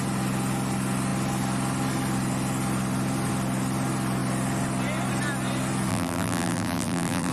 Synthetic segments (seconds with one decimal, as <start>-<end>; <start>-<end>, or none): 5.9-7.3